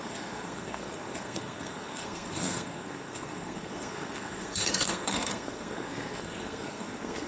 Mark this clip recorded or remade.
remade